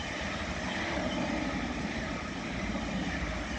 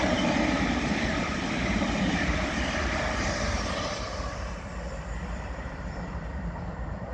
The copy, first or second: second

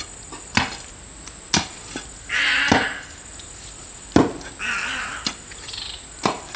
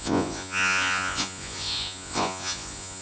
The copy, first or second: second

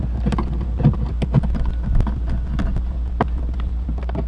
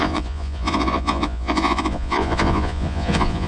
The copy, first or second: second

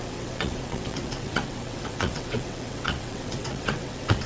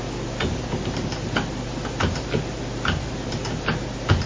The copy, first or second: first